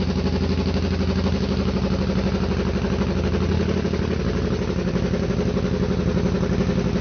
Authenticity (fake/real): real